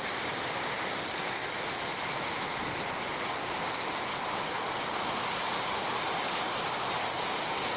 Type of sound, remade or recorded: recorded